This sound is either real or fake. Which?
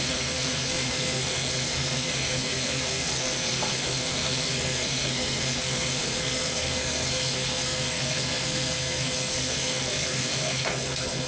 fake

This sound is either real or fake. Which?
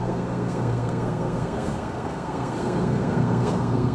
fake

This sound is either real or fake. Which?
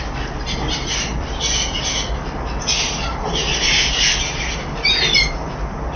real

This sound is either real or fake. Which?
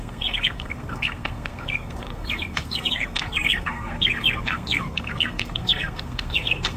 fake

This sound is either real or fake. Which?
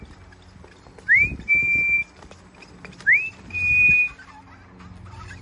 real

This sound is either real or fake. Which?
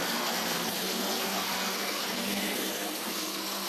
fake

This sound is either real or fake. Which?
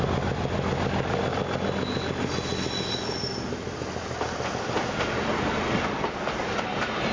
real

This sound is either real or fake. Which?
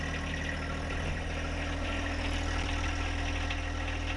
real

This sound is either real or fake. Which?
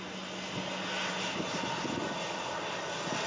real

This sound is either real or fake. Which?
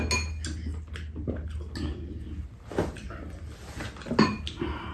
real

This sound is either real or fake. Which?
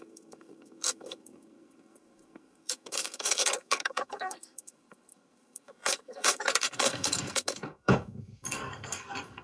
fake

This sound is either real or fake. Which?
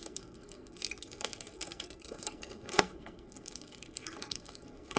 fake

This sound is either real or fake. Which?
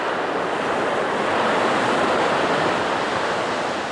real